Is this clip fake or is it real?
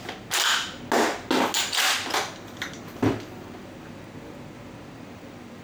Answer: real